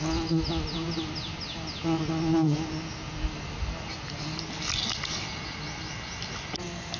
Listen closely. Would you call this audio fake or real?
real